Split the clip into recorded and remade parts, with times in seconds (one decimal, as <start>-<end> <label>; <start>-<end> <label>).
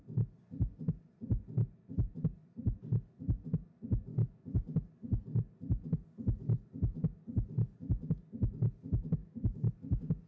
0.0-4.1 recorded; 4.1-4.6 remade; 4.6-9.2 recorded; 9.2-9.7 remade; 9.7-10.3 recorded